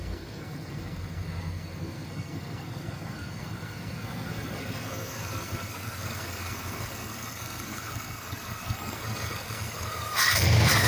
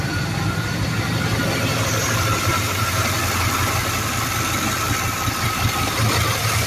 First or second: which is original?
second